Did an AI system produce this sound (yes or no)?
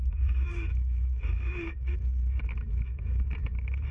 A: yes